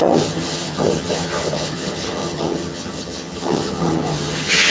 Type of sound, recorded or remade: remade